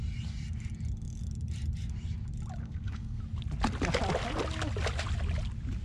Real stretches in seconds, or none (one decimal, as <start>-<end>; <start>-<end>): 0.0-2.6; 3.2-5.8